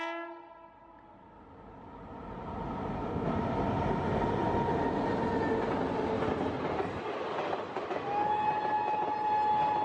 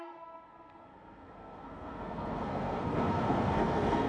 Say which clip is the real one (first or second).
first